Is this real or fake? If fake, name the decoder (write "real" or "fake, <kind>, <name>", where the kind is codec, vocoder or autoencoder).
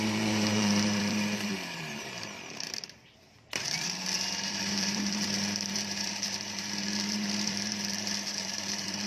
fake, vocoder, BigVGAN v2